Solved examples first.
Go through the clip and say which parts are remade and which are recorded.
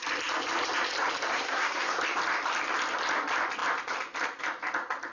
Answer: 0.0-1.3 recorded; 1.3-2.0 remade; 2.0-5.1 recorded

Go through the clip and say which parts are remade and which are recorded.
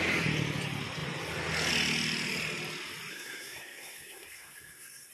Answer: 0.0-3.1 recorded; 3.1-5.1 remade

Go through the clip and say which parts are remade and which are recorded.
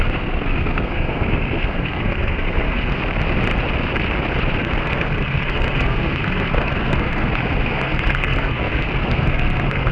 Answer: 0.0-3.0 remade; 3.0-4.6 recorded; 4.6-9.9 remade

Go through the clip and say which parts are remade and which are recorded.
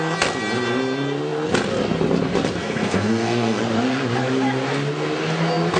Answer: 0.0-2.6 recorded; 2.6-3.6 remade; 3.6-5.8 recorded